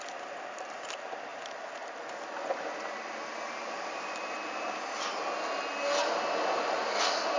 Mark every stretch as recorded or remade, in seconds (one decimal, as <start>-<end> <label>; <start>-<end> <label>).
0.0-7.4 recorded